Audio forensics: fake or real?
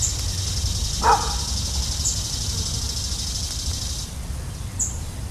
real